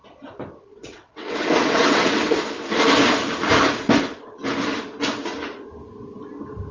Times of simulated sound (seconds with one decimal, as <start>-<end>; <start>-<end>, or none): 0.7-2.4